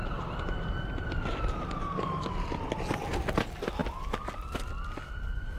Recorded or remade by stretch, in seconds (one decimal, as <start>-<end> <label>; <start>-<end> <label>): 0.0-5.6 recorded